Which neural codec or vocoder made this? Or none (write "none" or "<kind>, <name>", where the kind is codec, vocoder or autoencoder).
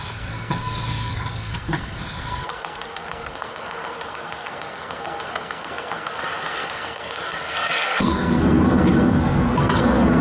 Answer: codec, SNAC